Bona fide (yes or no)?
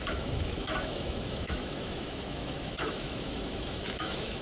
no